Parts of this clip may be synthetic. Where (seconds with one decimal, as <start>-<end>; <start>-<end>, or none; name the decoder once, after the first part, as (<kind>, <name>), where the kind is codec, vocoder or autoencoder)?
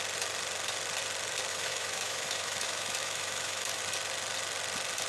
1.5-3.8 (autoencoder, DAC-VAE)